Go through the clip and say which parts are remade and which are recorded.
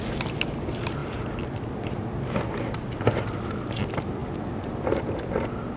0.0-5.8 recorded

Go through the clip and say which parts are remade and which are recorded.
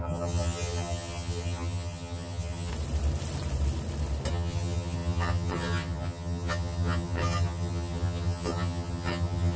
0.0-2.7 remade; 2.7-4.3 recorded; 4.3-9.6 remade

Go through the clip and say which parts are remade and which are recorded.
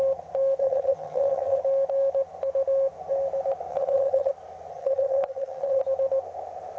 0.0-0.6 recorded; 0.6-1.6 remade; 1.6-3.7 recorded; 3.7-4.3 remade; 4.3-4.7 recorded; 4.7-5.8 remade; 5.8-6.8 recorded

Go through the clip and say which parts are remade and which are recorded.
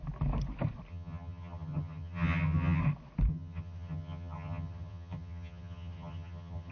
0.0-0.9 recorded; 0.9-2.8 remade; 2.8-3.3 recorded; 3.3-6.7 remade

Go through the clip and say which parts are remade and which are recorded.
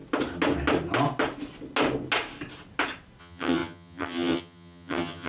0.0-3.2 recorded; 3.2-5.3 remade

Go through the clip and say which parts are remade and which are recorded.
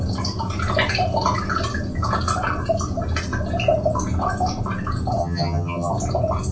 0.0-5.2 recorded; 5.2-5.9 remade; 5.9-6.5 recorded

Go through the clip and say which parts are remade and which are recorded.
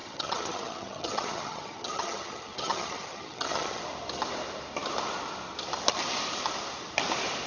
0.0-3.8 remade; 3.8-7.5 recorded